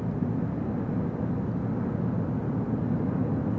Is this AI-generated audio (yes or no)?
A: no